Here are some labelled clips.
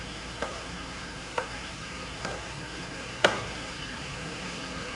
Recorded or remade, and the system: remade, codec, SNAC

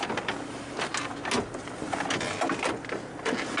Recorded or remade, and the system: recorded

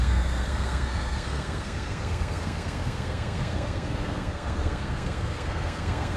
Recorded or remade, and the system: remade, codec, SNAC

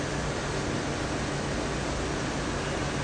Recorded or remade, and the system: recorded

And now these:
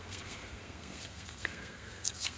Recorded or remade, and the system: remade, codec, SNAC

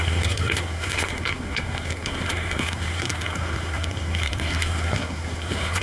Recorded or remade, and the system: remade, codec, SNAC